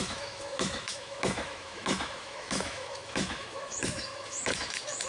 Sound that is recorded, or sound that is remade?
remade